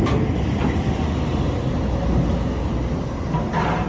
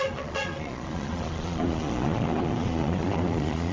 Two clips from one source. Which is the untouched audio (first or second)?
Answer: first